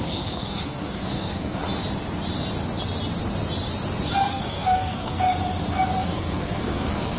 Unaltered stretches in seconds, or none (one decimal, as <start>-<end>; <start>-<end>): 1.6-4.3; 5.3-6.0